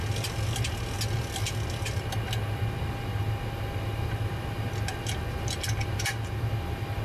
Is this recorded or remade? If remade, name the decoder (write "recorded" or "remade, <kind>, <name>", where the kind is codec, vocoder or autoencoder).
recorded